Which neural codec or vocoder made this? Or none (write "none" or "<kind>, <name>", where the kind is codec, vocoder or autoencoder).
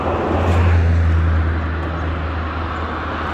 none